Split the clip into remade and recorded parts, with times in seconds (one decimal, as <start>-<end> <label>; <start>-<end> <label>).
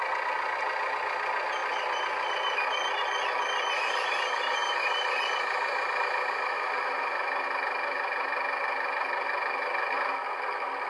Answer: 0.0-10.9 recorded